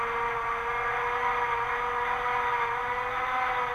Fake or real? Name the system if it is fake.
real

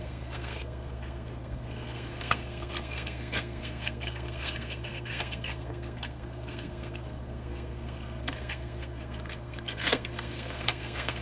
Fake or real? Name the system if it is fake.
fake, codec, SNAC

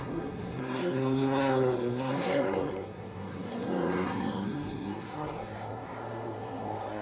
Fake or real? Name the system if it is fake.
fake, codec, SNAC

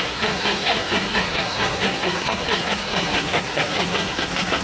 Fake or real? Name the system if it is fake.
fake, codec, SNAC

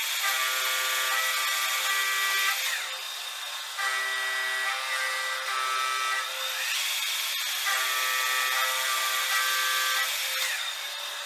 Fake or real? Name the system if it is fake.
real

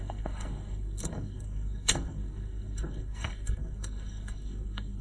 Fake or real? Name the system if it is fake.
fake, codec, SNAC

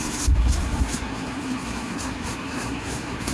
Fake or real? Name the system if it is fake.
fake, codec, SNAC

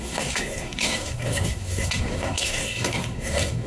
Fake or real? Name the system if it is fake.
fake, codec, SNAC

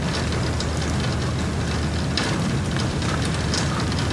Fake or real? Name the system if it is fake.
real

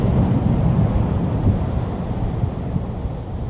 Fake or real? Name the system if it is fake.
real